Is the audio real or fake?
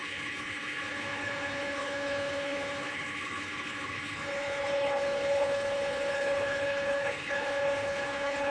fake